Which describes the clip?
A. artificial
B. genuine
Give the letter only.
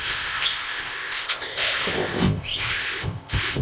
A